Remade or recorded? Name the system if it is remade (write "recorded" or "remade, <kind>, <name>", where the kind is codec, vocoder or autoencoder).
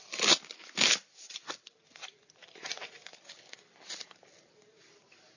remade, vocoder, BigVGAN v2